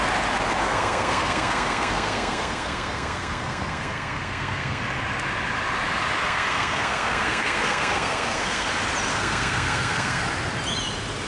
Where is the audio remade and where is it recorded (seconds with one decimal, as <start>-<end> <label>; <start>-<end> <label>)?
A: 0.0-0.6 recorded; 0.6-4.8 remade; 4.8-6.2 recorded; 6.2-8.7 remade; 8.7-9.1 recorded; 9.1-10.2 remade; 10.2-11.3 recorded